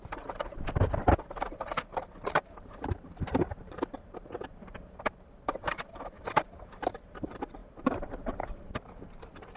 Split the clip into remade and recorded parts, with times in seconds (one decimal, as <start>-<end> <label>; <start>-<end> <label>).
0.0-9.6 remade